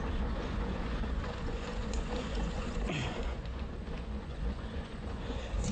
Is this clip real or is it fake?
fake